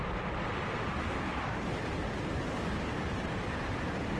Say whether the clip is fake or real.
fake